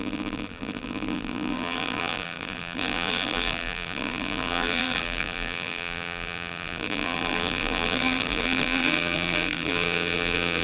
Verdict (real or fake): fake